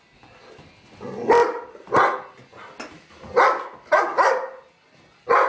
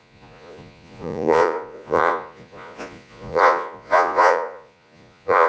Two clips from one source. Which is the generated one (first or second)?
second